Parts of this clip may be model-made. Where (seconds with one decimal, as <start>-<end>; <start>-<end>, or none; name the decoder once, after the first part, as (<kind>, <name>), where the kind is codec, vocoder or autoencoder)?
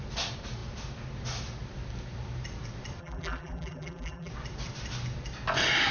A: 3.0-4.3 (vocoder, BigVGAN v2)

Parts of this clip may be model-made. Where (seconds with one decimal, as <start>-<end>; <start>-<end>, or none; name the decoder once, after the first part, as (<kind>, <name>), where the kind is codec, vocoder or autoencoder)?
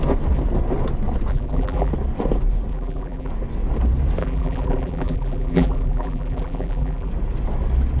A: 1.3-1.9 (vocoder, BigVGAN v2); 2.7-3.3; 4.2-7.1